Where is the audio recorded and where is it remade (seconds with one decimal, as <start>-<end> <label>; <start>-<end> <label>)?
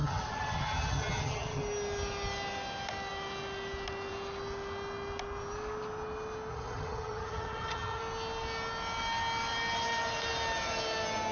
0.0-1.6 remade; 1.6-6.5 recorded; 6.5-8.0 remade; 8.0-11.3 recorded